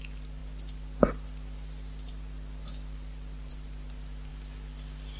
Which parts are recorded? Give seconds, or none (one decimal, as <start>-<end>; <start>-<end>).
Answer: 0.0-5.2